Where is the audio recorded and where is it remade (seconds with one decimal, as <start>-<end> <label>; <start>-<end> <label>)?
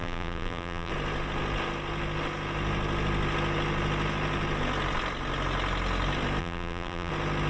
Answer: 0.0-0.9 remade; 0.9-6.4 recorded; 6.4-7.1 remade; 7.1-7.5 recorded